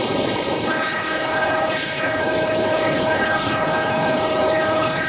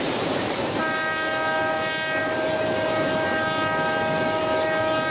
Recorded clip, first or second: second